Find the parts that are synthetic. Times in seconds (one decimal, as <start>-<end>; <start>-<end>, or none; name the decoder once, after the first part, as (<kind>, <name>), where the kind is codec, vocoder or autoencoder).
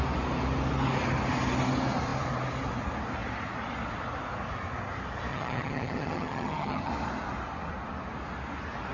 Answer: 5.3-6.9 (vocoder, HiFi-GAN)